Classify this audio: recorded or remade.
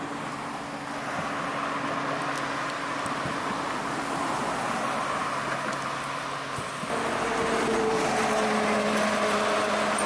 recorded